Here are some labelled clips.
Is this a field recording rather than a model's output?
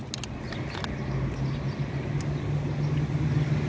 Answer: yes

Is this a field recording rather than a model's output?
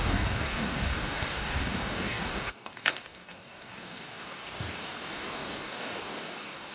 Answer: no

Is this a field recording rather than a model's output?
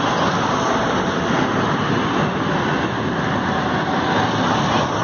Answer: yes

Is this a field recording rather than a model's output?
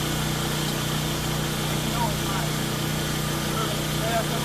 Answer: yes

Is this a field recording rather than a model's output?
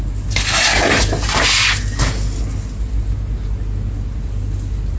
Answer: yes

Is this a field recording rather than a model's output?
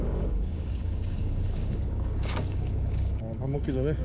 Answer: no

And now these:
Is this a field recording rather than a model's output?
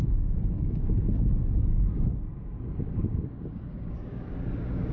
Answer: no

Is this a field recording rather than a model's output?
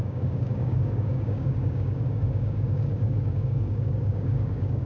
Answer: no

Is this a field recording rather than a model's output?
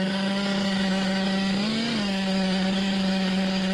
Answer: no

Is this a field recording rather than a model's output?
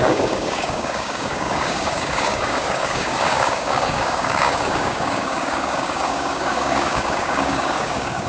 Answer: no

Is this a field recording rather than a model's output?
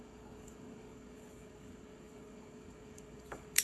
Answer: no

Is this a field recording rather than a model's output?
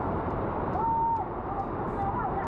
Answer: yes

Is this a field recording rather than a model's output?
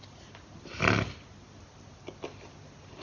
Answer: yes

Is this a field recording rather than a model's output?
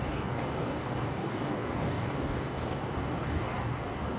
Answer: no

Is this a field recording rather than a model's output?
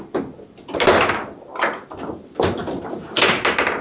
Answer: yes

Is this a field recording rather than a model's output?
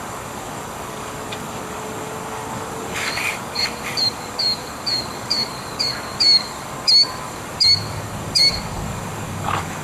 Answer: no